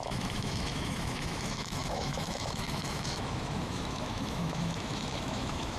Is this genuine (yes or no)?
no